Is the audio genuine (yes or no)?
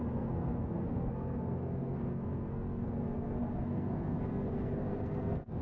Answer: no